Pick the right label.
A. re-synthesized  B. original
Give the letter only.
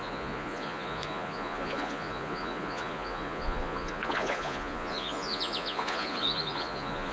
A